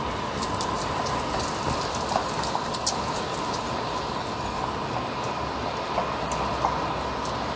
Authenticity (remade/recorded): recorded